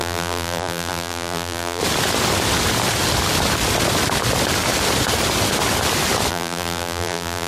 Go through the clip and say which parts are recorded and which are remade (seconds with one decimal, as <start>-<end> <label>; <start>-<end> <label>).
0.0-1.8 remade; 1.8-6.3 recorded; 6.3-7.5 remade